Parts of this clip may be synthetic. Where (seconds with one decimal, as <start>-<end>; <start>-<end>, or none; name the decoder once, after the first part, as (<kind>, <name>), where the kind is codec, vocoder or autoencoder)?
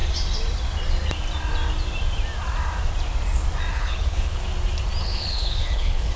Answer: 3.7-4.4 (codec, HILCodec); 5.0-6.2